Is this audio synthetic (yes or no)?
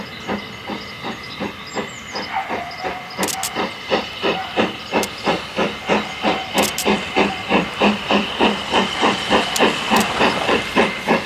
no